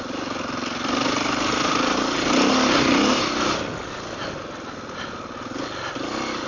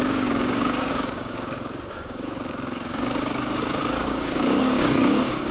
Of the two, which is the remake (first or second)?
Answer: second